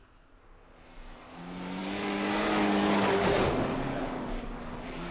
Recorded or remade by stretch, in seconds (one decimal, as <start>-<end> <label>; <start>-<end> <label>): 0.0-1.8 recorded; 1.8-5.1 remade